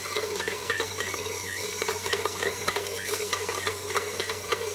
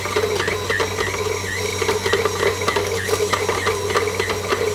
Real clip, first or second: second